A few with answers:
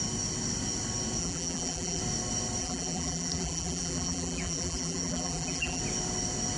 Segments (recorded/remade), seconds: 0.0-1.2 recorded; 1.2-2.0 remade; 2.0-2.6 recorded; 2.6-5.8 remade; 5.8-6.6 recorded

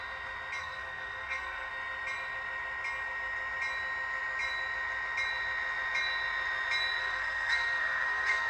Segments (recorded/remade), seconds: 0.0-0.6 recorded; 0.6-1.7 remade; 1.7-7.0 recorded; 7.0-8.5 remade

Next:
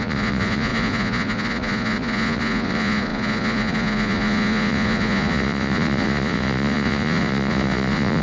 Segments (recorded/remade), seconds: 0.0-8.2 remade

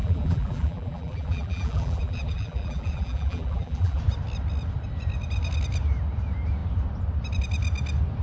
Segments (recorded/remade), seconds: 0.0-4.0 remade; 4.0-8.2 recorded